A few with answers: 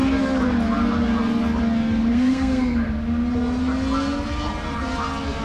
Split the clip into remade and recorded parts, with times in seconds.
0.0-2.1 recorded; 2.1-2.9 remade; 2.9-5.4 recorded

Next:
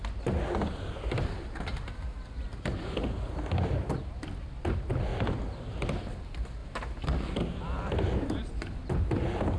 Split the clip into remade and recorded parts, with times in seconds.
0.0-9.6 recorded

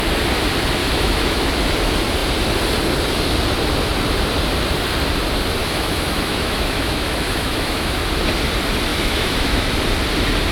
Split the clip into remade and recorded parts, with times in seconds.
0.0-0.8 recorded; 0.8-1.5 remade; 1.5-5.6 recorded; 5.6-8.0 remade; 8.0-8.9 recorded; 8.9-9.7 remade; 9.7-10.5 recorded

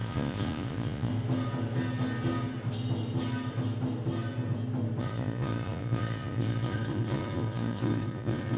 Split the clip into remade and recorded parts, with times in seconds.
0.0-1.1 remade; 1.1-5.0 recorded; 5.0-8.6 remade